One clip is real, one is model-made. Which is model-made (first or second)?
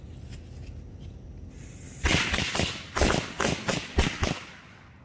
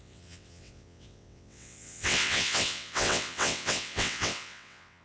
second